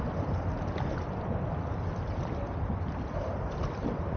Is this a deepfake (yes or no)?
no